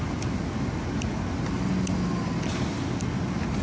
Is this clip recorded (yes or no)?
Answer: yes